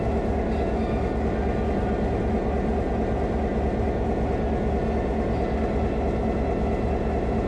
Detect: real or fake real